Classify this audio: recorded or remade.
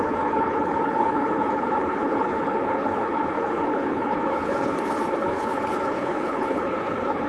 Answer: remade